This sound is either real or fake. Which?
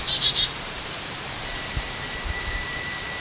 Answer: fake